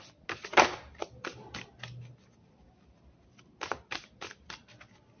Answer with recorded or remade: recorded